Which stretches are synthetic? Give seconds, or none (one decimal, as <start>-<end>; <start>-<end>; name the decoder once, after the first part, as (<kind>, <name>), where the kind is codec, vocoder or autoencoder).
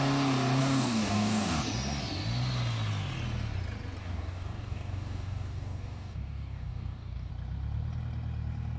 0.6-1.6 (codec, DAC); 4.0-7.3